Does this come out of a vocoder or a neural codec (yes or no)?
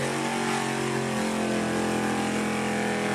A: no